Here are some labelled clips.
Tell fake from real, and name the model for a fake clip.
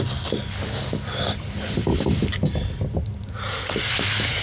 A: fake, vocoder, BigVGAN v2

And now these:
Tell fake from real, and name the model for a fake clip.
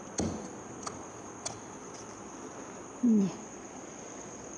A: real